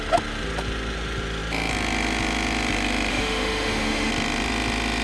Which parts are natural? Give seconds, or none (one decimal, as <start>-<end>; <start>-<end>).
0.0-3.1; 4.1-5.0